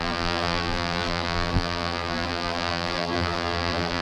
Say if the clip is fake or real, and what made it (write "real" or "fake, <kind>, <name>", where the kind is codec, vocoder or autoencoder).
fake, vocoder, BigVGAN v2